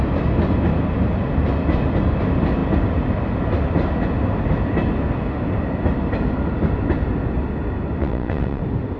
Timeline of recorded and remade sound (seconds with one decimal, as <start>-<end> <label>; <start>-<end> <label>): 0.0-8.0 recorded; 8.0-8.6 remade; 8.6-9.0 recorded